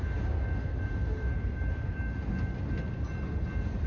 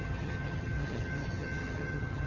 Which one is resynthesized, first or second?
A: second